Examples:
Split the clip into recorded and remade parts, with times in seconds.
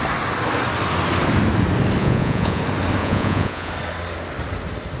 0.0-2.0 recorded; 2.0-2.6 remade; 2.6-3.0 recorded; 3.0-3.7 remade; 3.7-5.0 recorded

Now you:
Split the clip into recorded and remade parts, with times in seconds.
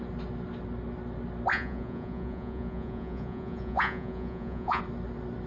0.0-1.5 recorded; 1.5-4.8 remade; 4.8-5.5 recorded